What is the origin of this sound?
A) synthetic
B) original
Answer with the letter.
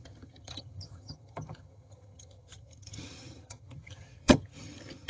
A